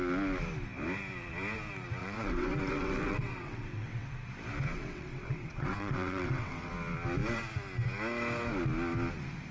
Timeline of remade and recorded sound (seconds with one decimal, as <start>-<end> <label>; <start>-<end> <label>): 0.0-2.0 recorded; 2.0-4.1 remade; 4.1-4.7 recorded; 4.7-6.7 remade; 6.7-9.5 recorded